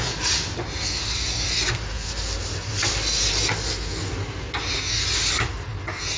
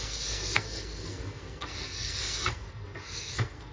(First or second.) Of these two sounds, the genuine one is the first